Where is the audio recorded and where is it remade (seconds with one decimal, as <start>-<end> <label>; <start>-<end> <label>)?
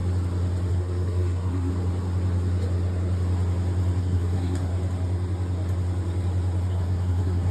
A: 0.0-0.7 recorded; 0.7-1.7 remade; 1.7-4.0 recorded; 4.0-4.7 remade; 4.7-6.7 recorded; 6.7-7.5 remade